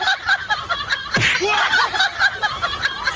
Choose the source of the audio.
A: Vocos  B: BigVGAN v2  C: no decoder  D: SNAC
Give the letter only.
C